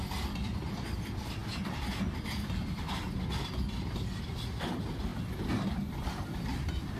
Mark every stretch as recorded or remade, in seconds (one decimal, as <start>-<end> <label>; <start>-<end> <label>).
0.0-7.0 recorded